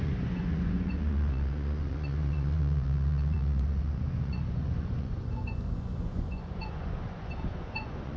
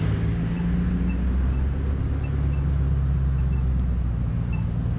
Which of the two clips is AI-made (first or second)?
first